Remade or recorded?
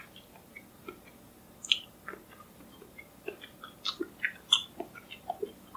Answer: recorded